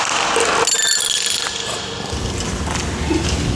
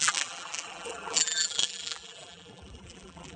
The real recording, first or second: first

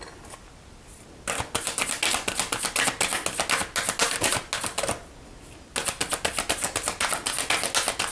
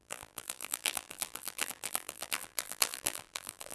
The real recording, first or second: first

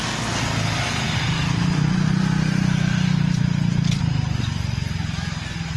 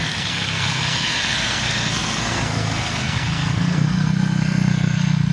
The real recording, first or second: first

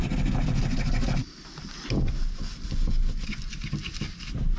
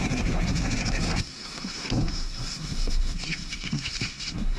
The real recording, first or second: first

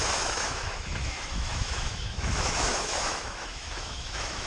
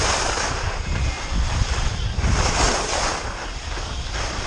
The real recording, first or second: second